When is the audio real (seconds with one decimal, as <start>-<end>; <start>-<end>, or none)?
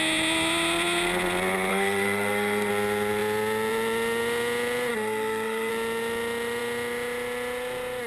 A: 0.0-1.7; 2.7-4.9; 5.7-8.1